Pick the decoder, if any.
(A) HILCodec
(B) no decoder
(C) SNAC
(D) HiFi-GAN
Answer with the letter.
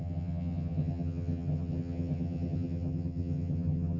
D